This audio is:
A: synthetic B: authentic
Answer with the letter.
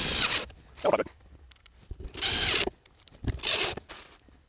A